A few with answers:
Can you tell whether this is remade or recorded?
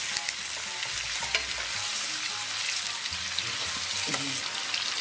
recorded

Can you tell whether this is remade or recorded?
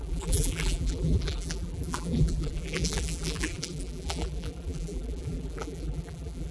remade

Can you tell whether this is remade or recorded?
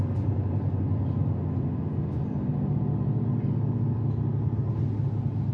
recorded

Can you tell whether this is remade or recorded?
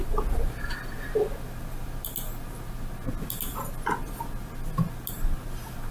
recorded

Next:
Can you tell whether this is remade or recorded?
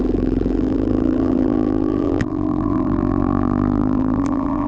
remade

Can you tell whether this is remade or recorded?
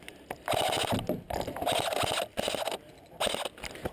recorded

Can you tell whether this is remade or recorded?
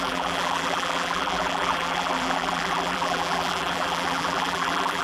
remade